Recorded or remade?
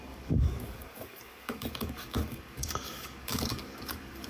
remade